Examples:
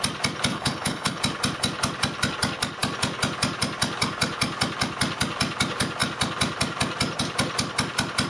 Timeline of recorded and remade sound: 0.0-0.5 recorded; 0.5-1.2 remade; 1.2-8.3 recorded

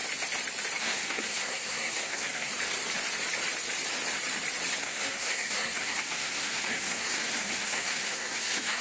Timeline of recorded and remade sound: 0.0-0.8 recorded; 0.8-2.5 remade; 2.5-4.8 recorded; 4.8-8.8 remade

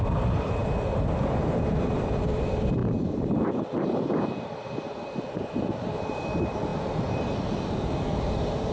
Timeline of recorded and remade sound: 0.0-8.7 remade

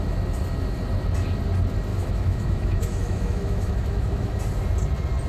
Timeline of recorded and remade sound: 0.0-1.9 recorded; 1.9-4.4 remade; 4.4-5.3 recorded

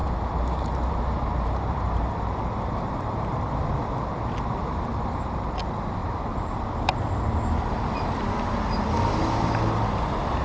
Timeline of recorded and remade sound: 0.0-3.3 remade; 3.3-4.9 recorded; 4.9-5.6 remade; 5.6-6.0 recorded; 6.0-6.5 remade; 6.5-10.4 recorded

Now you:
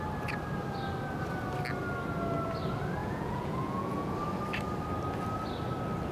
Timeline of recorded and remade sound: 0.0-3.0 recorded; 3.0-4.1 remade; 4.1-6.1 recorded

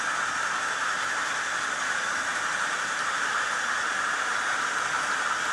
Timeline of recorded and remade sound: 0.0-5.5 recorded

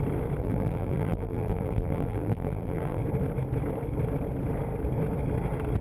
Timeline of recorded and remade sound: 0.0-0.4 recorded; 0.4-3.0 remade; 3.0-5.8 recorded